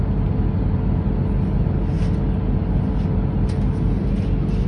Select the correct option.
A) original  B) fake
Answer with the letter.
A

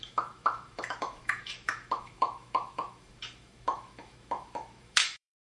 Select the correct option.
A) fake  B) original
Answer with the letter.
A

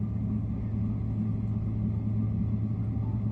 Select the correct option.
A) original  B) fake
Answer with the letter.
A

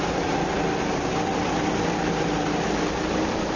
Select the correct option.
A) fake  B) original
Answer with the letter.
B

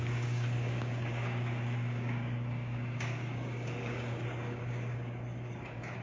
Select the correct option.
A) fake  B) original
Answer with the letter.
A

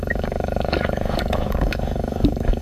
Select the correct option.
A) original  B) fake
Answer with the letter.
B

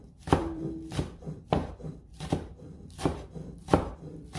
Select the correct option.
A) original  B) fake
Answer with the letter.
B